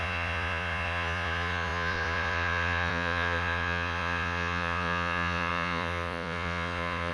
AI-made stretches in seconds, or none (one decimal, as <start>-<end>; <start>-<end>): 0.0-7.1